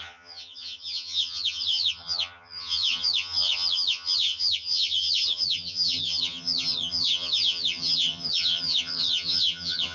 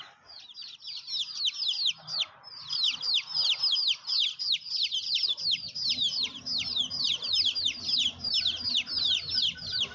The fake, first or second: first